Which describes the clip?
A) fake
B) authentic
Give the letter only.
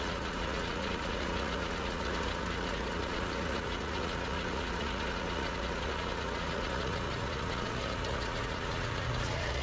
A